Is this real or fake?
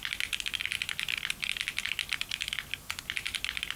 real